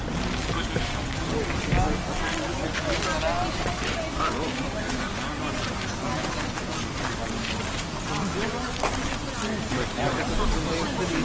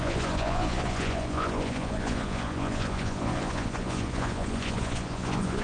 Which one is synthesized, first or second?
second